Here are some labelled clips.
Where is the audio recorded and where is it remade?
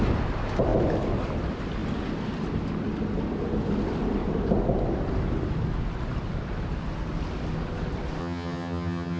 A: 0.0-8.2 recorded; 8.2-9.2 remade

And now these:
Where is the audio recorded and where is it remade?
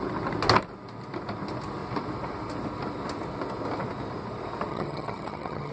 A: 0.0-4.7 recorded; 4.7-5.7 remade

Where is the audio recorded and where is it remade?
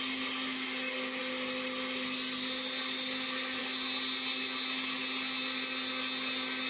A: 0.0-6.7 recorded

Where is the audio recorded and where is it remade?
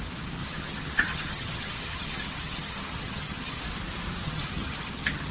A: 0.0-0.4 recorded; 0.4-3.6 remade; 3.6-4.2 recorded; 4.2-5.3 remade